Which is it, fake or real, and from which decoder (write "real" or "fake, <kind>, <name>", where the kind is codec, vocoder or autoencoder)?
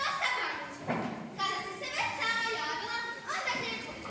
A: fake, vocoder, BigVGAN v2